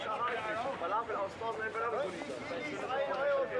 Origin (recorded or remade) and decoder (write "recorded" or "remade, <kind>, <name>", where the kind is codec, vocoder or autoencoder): recorded